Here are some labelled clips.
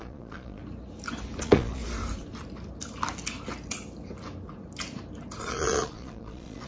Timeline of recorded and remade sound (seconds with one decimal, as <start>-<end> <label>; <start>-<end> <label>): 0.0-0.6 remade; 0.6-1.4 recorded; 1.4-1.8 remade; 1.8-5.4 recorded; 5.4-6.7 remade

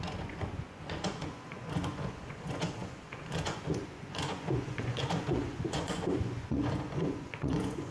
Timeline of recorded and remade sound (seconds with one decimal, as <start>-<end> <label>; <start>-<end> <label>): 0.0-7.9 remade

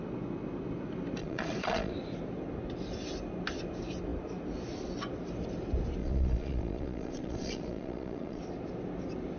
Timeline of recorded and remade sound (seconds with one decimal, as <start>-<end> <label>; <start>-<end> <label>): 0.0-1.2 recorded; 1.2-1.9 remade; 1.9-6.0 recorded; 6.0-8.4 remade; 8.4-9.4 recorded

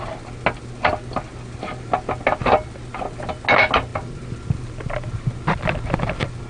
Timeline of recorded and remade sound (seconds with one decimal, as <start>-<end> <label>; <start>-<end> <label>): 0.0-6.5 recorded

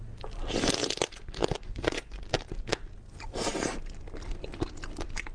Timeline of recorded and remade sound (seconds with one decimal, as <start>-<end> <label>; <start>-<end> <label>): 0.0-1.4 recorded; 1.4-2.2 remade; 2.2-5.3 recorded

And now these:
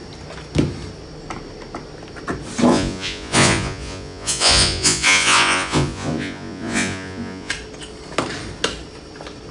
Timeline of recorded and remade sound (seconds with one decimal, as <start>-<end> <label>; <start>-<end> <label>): 0.0-2.7 recorded; 2.7-7.5 remade; 7.5-9.5 recorded

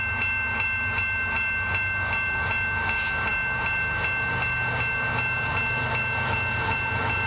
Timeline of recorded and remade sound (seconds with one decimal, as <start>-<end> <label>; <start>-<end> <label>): 0.0-7.3 recorded